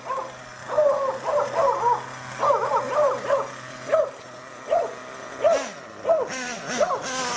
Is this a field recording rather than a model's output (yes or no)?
yes